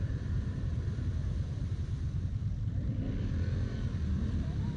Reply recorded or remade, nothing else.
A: remade